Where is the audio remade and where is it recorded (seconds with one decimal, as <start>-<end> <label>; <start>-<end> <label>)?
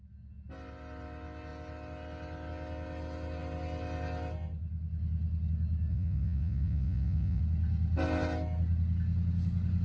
0.0-5.9 recorded; 5.9-7.4 remade; 7.4-9.8 recorded